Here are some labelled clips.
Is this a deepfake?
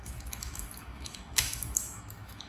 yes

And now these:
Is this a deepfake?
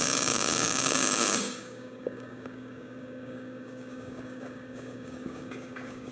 yes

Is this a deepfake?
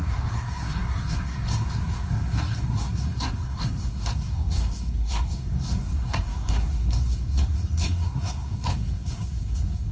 yes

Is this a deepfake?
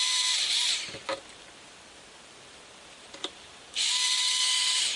yes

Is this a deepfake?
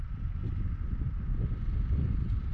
no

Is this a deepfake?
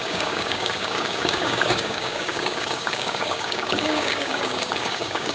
yes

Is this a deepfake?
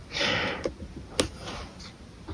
no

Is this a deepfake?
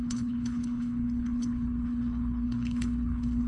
yes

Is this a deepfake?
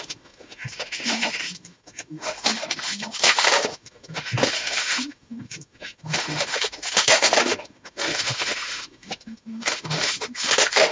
yes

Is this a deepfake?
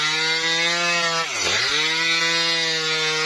no